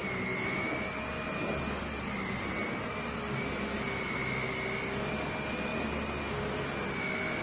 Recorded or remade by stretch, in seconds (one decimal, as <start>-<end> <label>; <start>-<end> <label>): 0.0-7.4 recorded